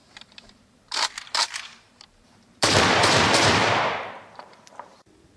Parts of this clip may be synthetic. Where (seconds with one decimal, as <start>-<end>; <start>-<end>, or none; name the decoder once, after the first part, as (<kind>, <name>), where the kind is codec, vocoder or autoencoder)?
0.0-5.4 (vocoder, BigVGAN v2)